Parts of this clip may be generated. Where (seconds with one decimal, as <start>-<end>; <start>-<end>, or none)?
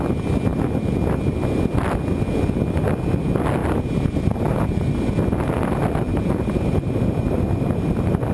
3.6-5.1; 6.1-8.3